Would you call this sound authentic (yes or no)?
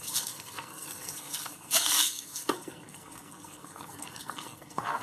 no